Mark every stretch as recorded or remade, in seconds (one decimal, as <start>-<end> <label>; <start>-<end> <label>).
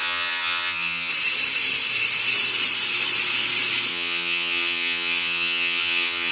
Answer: 0.0-1.1 remade; 1.1-3.9 recorded; 3.9-6.3 remade